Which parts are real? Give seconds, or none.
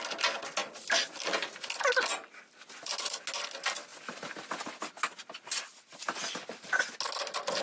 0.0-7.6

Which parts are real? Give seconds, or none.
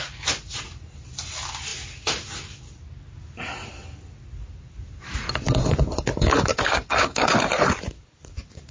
0.0-6.5; 7.4-8.7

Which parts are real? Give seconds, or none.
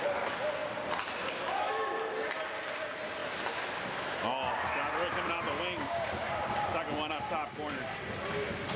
0.0-8.8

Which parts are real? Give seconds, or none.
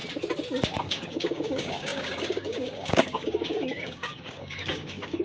0.0-0.8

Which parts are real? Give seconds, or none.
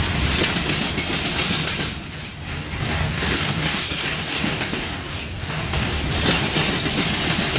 0.0-2.5; 6.0-7.6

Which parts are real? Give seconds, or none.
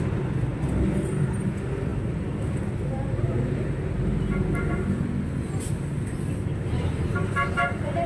0.0-8.1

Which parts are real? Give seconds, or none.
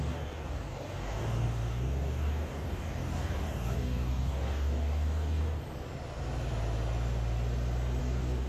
5.4-8.0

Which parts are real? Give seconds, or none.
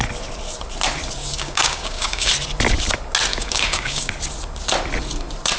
0.0-1.2; 2.3-3.3; 4.1-5.6